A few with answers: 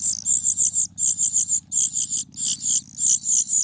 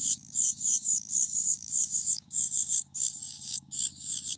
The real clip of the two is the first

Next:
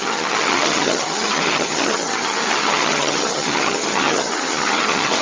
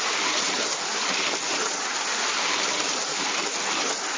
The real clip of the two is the second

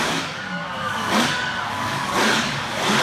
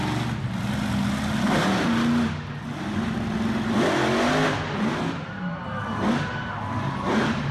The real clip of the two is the second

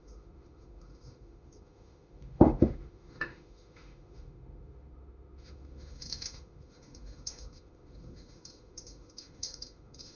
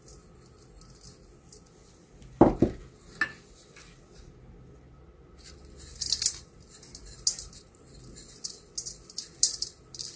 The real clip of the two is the second